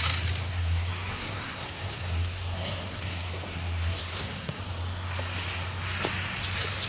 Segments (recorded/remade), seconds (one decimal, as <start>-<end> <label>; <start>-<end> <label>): 0.0-0.5 recorded; 0.5-4.6 remade; 4.6-6.9 recorded

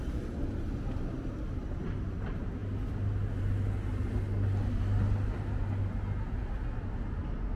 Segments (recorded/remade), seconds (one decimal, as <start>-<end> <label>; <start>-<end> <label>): 0.0-7.6 recorded

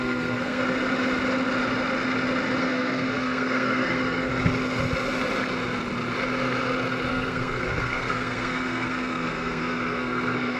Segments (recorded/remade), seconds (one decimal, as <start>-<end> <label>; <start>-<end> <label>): 0.0-0.6 remade; 0.6-2.6 recorded; 2.6-4.3 remade; 4.3-7.1 recorded; 7.1-10.6 remade

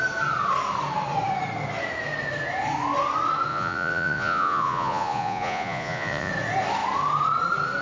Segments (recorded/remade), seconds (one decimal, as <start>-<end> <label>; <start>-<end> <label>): 0.0-3.5 recorded; 3.5-6.3 remade; 6.3-7.8 recorded

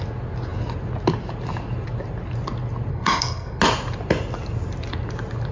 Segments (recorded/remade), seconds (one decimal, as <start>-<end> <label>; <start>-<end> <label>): 0.0-2.9 recorded; 2.9-3.6 remade; 3.6-5.5 recorded